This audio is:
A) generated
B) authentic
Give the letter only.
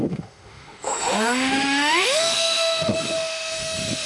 A